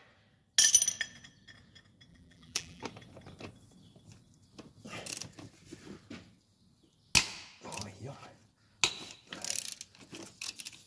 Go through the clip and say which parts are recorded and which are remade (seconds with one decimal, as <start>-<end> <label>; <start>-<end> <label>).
0.0-2.1 recorded; 2.1-2.8 remade; 2.8-10.9 recorded